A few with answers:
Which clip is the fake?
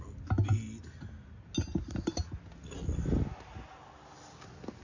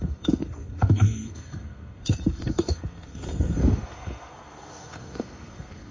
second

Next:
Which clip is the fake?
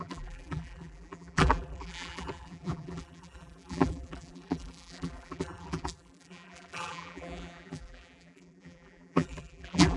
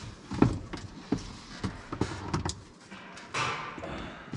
first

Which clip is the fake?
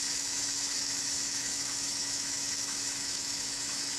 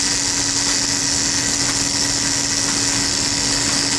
first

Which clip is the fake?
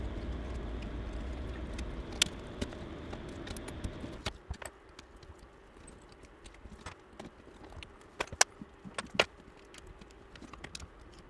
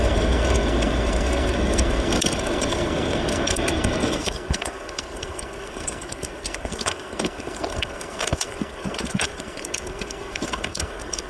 second